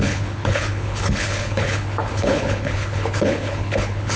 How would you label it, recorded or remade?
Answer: remade